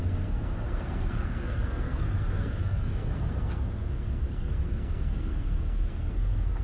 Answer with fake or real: fake